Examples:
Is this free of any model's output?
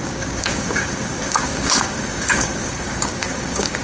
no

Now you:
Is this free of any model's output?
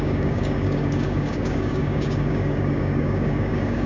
no